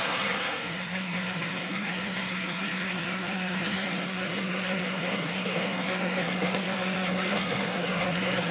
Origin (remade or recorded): remade